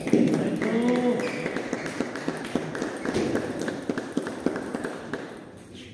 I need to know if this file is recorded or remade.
recorded